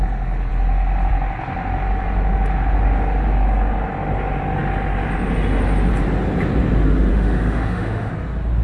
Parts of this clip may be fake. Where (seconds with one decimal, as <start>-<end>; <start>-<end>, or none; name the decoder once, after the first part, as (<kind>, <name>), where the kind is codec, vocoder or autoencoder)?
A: 7.1-8.1 (autoencoder, DAC-VAE)